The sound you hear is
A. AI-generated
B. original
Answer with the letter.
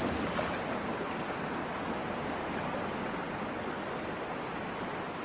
B